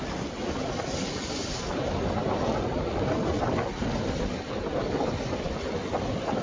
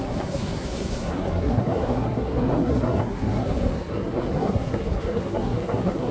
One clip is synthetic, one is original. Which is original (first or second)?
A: first